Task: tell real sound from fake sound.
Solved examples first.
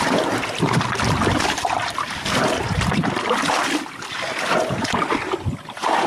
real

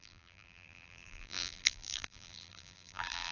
fake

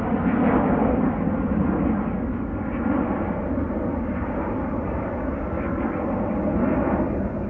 real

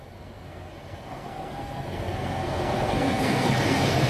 fake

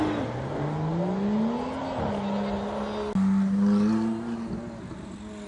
real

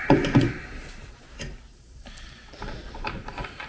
fake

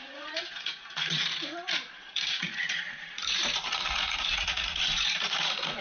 fake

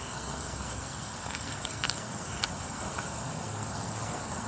fake